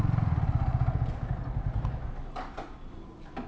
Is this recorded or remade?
recorded